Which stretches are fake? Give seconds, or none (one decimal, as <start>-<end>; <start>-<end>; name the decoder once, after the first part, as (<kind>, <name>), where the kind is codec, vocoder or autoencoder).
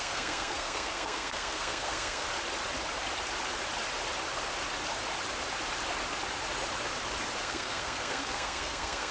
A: 0.0-2.3 (codec, SNAC); 7.4-9.1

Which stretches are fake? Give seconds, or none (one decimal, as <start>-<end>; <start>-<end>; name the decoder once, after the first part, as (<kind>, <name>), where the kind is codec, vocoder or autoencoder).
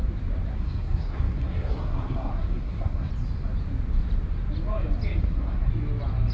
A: 0.6-3.1 (codec, SNAC); 5.2-5.7